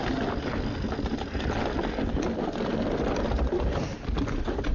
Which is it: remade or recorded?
recorded